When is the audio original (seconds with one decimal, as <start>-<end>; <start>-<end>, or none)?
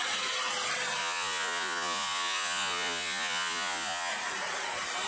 0.0-1.0; 4.1-5.1